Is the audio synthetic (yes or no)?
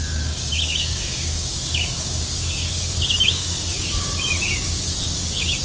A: yes